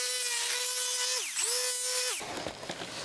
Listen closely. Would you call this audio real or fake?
real